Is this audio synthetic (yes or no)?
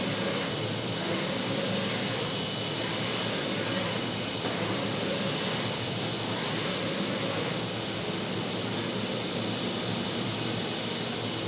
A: no